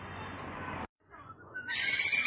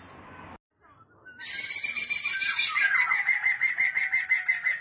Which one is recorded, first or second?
second